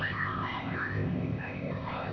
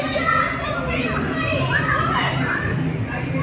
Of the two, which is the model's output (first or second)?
first